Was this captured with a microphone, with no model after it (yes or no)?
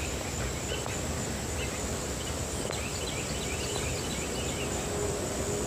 yes